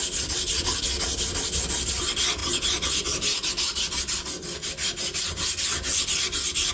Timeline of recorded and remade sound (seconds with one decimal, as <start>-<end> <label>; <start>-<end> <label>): 0.0-6.7 recorded